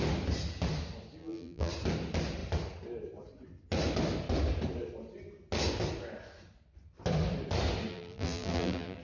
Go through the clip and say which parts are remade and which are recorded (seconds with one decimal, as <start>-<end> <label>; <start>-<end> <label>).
0.0-1.2 recorded; 1.2-1.7 remade; 1.7-7.9 recorded; 7.9-9.0 remade